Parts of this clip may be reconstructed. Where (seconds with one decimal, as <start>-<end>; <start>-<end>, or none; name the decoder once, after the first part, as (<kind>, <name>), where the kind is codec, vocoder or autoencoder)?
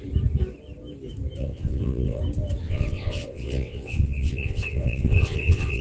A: 1.4-2.2 (vocoder, WaveNeXt); 2.6-5.8